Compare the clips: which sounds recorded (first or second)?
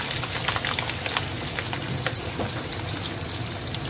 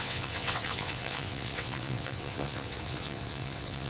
first